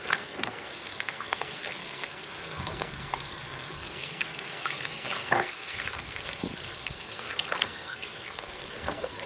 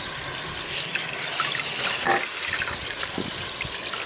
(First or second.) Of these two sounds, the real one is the second